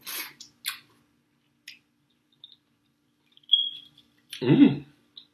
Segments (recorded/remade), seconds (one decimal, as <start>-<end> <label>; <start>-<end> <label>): 0.0-2.1 recorded; 2.1-4.7 remade; 4.7-5.3 recorded